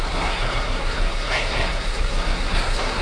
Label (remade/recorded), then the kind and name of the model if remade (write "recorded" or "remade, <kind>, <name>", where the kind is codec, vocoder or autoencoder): remade, codec, SNAC